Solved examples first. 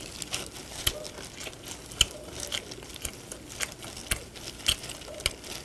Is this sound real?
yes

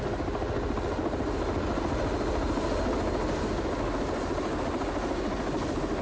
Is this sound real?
yes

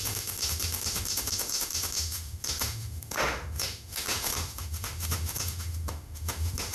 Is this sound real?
no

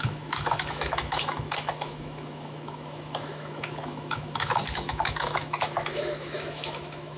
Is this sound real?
no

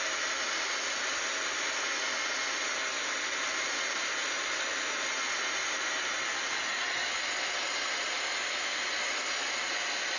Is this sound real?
yes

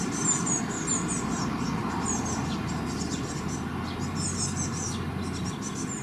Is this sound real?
yes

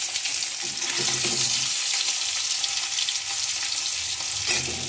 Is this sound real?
yes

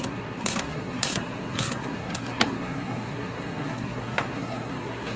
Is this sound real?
no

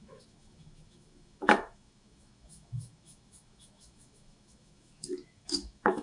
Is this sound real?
no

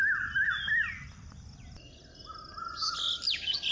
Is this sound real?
yes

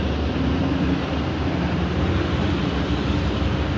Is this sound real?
yes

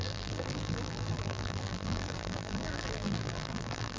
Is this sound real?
no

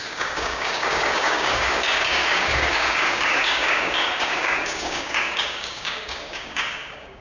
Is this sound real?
no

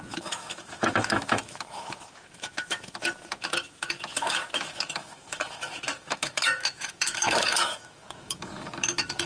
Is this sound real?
no